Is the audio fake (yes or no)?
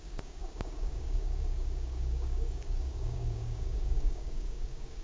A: yes